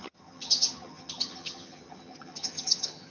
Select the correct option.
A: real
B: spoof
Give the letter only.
B